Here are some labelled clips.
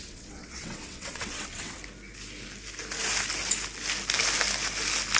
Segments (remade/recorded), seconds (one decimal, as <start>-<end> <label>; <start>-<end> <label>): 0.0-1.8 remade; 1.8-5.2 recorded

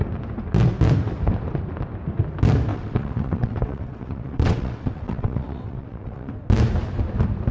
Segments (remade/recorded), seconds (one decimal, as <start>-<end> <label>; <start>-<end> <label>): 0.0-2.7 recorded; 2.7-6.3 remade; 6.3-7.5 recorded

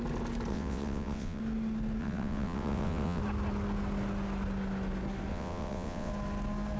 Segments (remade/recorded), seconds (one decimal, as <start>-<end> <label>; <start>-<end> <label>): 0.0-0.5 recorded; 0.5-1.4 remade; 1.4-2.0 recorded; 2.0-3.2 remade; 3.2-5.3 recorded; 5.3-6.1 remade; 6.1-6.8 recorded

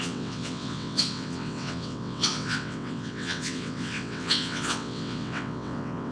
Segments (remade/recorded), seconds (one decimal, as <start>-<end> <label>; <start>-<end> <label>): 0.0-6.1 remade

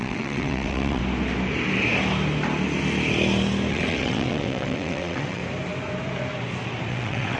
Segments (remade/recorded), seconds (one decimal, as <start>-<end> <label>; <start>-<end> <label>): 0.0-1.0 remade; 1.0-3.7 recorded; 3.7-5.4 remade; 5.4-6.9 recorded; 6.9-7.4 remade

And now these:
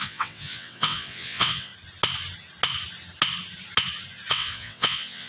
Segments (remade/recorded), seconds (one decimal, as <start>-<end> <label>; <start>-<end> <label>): 0.0-1.7 remade; 1.7-4.3 recorded; 4.3-5.3 remade

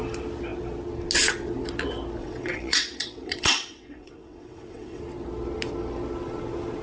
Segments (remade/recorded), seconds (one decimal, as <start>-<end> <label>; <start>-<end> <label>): 0.0-2.2 recorded; 2.2-5.0 remade; 5.0-6.8 recorded